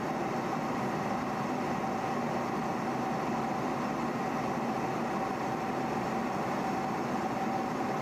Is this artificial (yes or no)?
no